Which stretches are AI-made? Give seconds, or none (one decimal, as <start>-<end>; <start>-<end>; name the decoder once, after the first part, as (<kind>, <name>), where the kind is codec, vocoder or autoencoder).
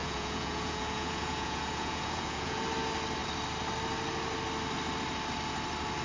0.0-2.6 (vocoder, Vocos)